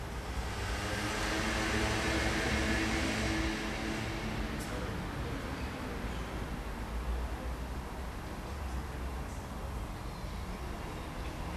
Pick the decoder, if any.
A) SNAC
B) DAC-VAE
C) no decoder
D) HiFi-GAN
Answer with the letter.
C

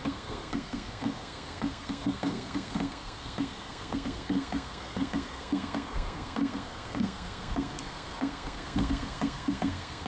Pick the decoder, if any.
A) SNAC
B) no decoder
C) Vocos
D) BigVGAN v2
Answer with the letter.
A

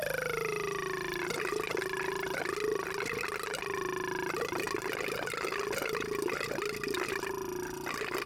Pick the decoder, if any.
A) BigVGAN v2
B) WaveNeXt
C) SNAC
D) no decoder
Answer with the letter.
D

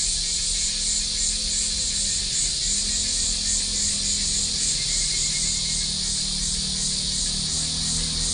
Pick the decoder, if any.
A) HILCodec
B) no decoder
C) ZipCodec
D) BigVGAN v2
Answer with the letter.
B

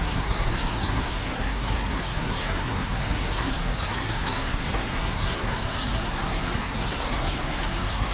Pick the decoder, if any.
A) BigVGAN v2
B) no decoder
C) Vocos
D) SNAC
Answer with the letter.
D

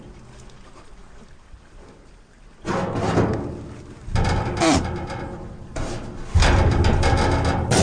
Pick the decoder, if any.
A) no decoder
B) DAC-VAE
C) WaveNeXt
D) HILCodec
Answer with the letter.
A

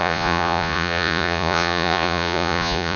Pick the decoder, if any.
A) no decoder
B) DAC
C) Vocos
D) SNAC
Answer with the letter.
C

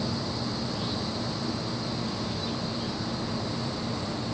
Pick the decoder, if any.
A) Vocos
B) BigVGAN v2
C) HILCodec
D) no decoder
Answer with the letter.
D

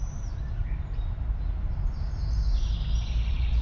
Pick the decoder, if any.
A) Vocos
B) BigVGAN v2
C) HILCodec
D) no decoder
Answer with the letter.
B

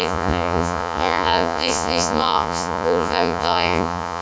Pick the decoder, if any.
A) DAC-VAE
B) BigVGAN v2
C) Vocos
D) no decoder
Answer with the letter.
C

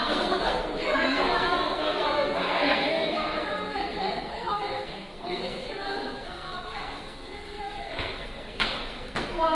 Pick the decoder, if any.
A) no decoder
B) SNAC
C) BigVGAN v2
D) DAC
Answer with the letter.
B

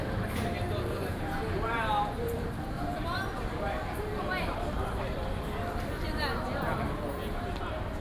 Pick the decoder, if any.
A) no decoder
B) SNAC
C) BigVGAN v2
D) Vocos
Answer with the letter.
C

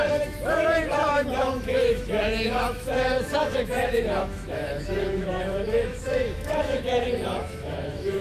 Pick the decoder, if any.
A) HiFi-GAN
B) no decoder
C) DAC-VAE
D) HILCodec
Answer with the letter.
C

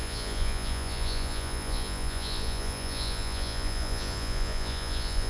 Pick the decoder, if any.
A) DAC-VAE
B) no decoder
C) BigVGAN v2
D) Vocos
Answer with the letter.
D